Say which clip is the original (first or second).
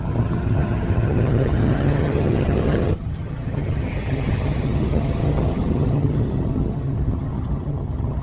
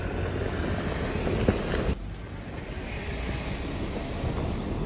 second